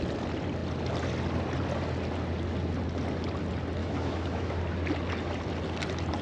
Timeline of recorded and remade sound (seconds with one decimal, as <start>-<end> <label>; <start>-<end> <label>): 0.0-3.8 recorded; 3.8-4.6 remade; 4.6-6.2 recorded